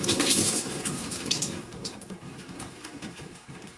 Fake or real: fake